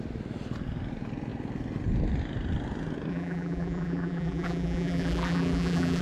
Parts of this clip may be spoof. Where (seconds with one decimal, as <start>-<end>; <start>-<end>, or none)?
3.1-6.0